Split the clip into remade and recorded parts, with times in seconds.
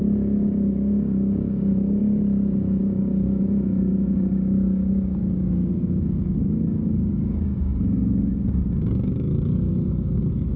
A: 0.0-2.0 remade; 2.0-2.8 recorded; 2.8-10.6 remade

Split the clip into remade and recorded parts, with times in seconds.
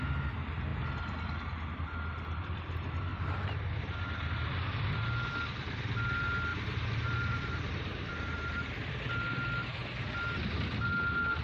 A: 0.0-6.5 recorded; 6.5-8.9 remade; 8.9-11.4 recorded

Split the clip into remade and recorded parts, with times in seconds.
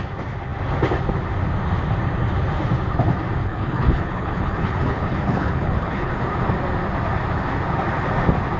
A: 0.0-3.4 recorded; 3.4-6.1 remade; 6.1-8.6 recorded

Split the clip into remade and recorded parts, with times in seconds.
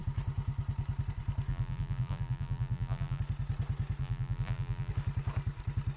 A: 0.0-1.5 recorded; 1.5-3.2 remade; 3.2-4.0 recorded; 4.0-4.9 remade; 4.9-6.0 recorded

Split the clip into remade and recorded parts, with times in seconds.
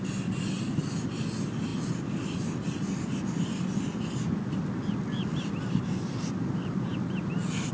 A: 0.0-7.7 recorded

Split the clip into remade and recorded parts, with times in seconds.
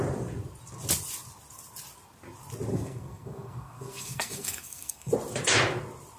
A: 0.0-2.7 recorded; 2.7-5.1 remade; 5.1-6.2 recorded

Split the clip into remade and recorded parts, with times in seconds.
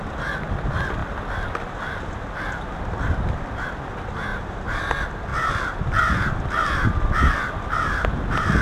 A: 0.0-4.3 recorded; 4.3-4.8 remade; 4.8-8.6 recorded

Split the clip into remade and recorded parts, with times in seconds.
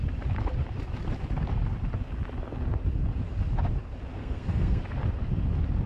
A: 0.0-4.2 recorded; 4.2-4.8 remade; 4.8-5.9 recorded